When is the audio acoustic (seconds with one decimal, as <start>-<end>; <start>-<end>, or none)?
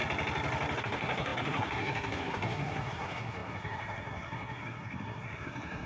0.0-0.8